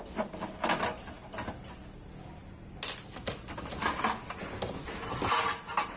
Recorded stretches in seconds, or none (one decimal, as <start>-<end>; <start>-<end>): 0.0-6.0